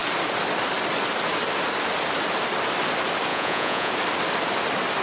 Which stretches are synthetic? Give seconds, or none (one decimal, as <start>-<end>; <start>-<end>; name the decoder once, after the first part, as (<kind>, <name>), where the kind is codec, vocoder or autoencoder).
3.3-3.9 (vocoder, Vocos)